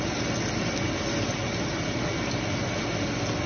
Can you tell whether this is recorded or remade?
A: recorded